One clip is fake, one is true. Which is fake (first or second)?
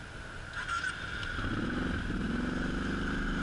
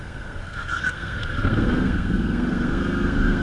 second